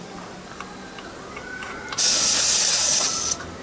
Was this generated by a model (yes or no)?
no